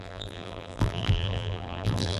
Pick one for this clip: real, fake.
fake